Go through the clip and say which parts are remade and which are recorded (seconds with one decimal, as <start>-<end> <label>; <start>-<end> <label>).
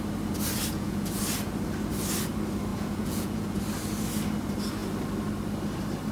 0.0-0.7 recorded; 0.7-1.2 remade; 1.2-2.7 recorded; 2.7-3.6 remade; 3.6-6.1 recorded